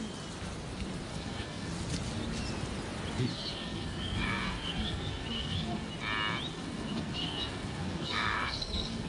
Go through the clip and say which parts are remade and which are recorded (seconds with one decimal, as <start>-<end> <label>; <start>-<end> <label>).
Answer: 0.0-1.1 recorded; 1.1-1.7 remade; 1.7-3.3 recorded; 3.3-5.9 remade; 5.9-6.5 recorded; 6.5-9.1 remade